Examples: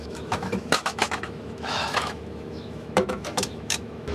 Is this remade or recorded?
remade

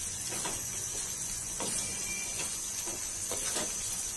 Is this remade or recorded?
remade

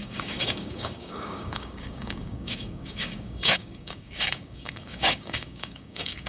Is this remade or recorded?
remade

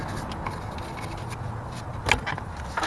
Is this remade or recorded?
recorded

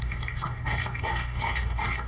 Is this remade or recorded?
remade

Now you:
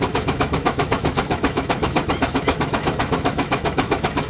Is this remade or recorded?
remade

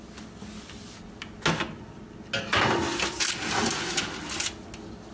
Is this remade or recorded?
recorded